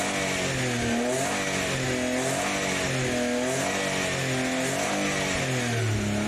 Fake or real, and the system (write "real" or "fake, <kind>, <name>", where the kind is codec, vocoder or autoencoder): real